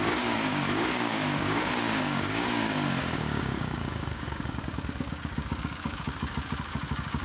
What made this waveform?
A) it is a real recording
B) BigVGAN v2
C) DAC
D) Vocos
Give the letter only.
C